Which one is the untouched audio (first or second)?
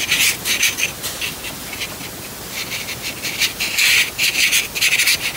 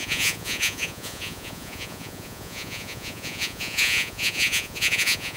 first